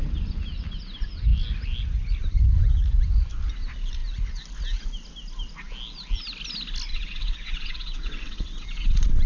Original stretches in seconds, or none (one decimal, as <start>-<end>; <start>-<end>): 0.0-6.9